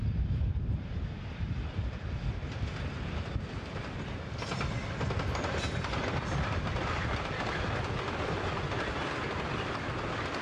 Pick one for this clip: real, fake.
real